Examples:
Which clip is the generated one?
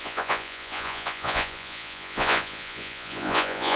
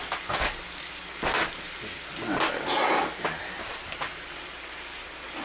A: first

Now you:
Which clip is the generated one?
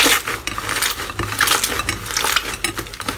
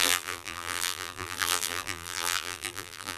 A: second